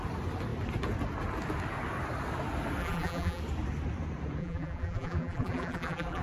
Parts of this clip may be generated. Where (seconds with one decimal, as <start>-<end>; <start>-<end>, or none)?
2.8-3.4; 4.4-6.2